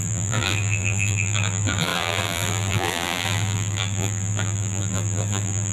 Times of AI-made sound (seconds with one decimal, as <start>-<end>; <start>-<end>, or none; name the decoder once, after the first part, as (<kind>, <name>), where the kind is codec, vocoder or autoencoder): 0.0-5.7 (vocoder, BigVGAN v2)